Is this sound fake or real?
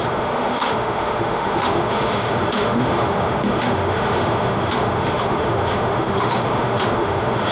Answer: fake